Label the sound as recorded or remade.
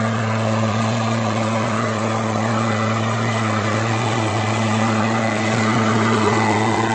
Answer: remade